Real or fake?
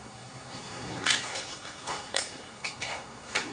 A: fake